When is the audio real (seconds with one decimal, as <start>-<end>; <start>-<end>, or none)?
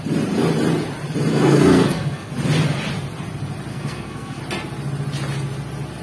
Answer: 0.0-1.3; 2.3-3.7; 4.4-6.0